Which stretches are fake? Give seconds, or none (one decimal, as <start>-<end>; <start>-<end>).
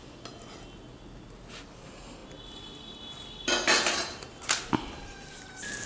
none